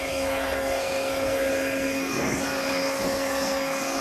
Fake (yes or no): yes